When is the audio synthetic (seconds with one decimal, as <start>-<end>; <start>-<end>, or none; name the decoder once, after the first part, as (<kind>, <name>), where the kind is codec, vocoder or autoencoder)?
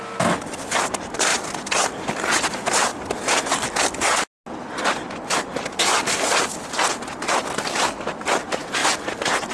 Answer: none